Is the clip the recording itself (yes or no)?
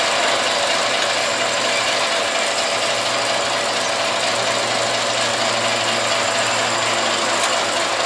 yes